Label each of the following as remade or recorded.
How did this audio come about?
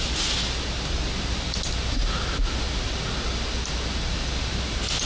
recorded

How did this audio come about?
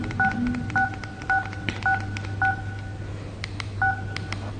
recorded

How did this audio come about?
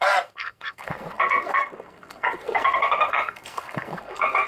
remade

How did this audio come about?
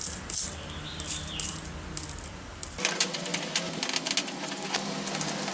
recorded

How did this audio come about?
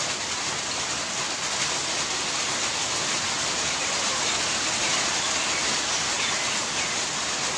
recorded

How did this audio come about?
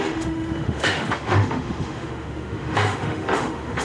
remade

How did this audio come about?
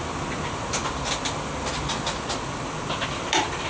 recorded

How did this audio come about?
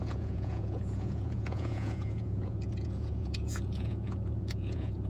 remade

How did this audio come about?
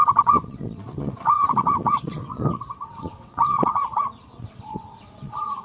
remade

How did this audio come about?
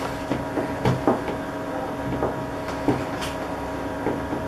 recorded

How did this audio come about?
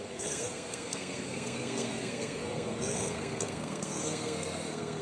remade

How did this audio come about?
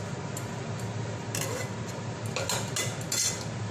recorded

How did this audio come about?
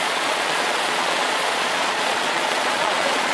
remade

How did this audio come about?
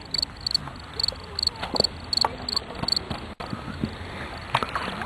recorded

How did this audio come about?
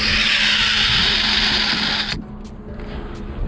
recorded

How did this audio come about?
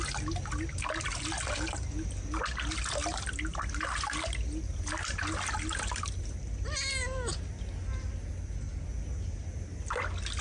recorded